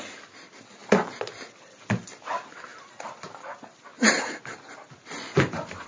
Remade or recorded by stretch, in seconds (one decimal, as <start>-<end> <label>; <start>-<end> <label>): 0.0-2.7 recorded; 2.7-3.9 remade; 3.9-5.9 recorded

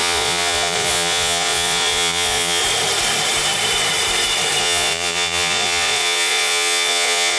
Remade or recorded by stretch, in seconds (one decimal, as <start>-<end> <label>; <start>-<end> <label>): 0.0-2.6 remade; 2.6-4.6 recorded; 4.6-7.4 remade

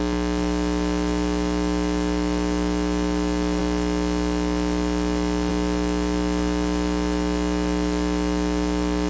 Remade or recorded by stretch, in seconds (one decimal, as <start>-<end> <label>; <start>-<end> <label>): 0.0-9.1 recorded

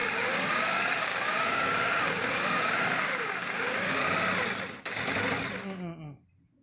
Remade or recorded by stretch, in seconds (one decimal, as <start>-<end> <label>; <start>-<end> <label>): 0.0-4.0 remade; 4.0-6.6 recorded

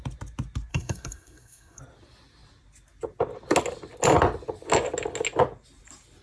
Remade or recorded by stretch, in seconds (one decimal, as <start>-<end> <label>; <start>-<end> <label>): 0.0-0.7 recorded; 0.7-1.8 remade; 1.8-6.2 recorded

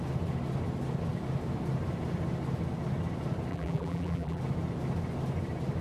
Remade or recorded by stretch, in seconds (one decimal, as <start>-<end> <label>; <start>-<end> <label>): 0.0-3.5 recorded; 3.5-4.4 remade; 4.4-5.8 recorded